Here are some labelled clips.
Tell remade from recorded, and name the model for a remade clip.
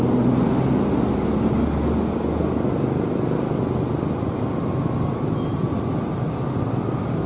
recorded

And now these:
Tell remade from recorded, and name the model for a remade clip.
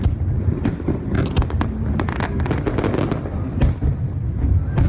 recorded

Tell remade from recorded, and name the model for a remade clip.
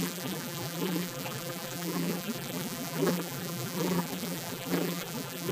remade, vocoder, BigVGAN v2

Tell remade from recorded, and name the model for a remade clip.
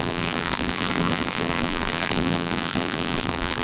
remade, vocoder, BigVGAN v2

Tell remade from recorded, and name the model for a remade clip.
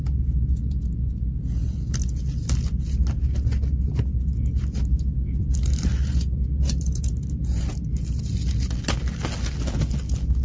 recorded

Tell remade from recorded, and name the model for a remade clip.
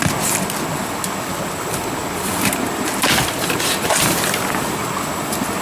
recorded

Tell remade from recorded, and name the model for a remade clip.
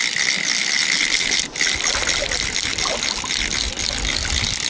recorded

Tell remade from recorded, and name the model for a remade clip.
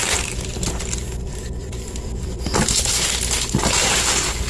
remade, vocoder, BigVGAN v2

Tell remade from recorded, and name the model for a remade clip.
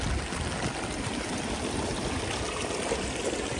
recorded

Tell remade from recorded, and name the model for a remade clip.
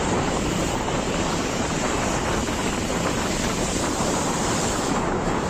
remade, vocoder, BigVGAN v2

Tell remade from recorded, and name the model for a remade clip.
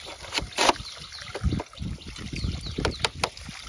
recorded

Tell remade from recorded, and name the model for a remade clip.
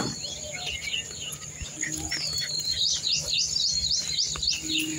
recorded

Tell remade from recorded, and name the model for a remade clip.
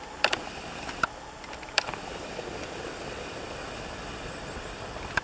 remade, vocoder, BigVGAN v2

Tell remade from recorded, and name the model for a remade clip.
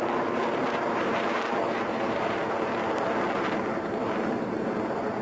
remade, vocoder, BigVGAN v2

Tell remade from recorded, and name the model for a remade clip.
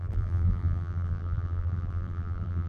remade, vocoder, BigVGAN v2